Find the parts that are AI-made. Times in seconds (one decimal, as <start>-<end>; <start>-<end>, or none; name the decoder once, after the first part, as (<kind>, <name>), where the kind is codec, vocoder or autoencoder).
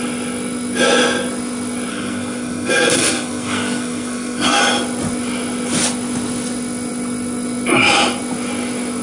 1.9-4.6 (codec, SNAC)